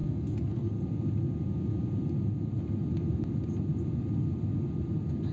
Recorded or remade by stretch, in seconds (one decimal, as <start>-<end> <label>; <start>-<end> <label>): 0.0-0.7 remade; 0.7-5.3 recorded

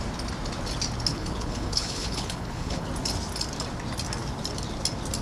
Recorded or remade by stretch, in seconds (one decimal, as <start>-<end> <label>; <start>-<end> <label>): 0.0-1.1 recorded; 1.1-2.9 remade; 2.9-5.2 recorded

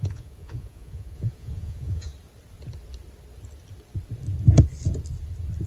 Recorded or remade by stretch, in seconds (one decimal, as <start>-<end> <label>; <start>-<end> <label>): 0.0-2.1 remade; 2.1-5.7 recorded

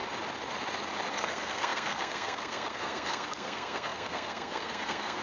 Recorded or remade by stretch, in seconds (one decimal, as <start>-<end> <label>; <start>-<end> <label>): 0.0-1.1 recorded; 1.1-5.2 remade

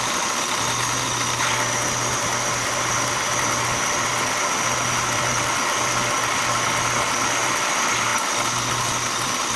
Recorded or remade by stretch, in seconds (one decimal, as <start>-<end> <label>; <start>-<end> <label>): 0.0-9.6 recorded

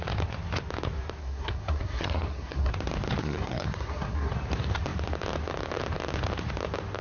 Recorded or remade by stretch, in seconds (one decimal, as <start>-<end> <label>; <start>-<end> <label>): 0.0-1.2 recorded; 1.2-2.7 remade; 2.7-3.2 recorded; 3.2-4.3 remade; 4.3-7.0 recorded

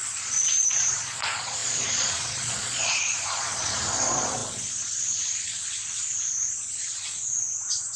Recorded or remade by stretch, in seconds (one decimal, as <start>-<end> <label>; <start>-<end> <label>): 0.0-8.0 remade

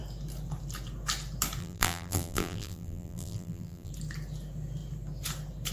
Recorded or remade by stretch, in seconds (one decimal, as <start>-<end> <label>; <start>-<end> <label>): 0.0-1.6 recorded; 1.6-3.9 remade; 3.9-5.7 recorded